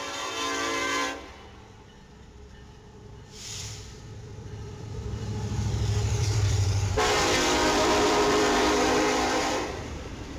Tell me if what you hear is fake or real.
fake